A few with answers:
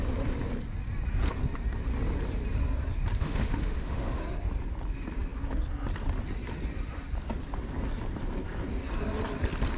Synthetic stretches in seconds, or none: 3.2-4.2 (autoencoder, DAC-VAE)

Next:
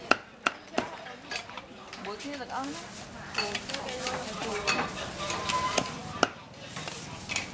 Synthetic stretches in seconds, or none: 0.0-1.9 (vocoder, BigVGAN v2); 4.2-7.5

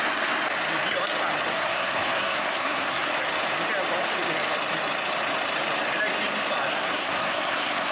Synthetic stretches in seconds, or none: 1.5-3.1 (codec, SNAC); 6.7-7.9

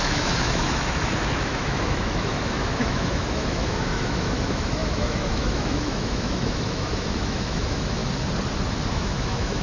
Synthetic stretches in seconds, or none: 0.0-8.0 (autoencoder, DAC-VAE); 8.9-9.6

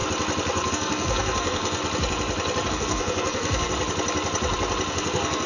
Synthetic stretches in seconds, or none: 0.7-1.8 (codec, SNAC); 2.7-3.7; 4.9-5.5